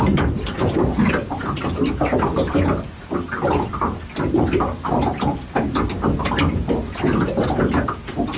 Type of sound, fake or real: real